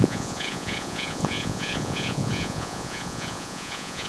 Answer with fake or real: fake